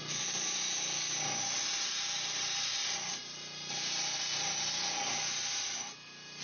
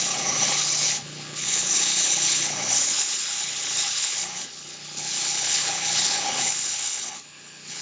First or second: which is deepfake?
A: second